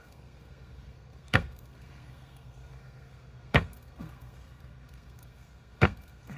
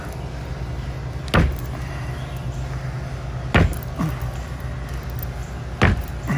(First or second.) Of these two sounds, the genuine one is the second